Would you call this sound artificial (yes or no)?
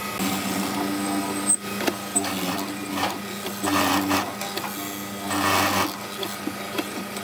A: no